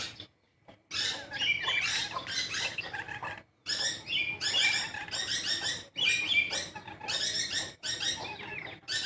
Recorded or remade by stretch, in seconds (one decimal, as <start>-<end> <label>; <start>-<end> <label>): 0.0-5.0 recorded; 5.0-6.5 remade; 6.5-9.1 recorded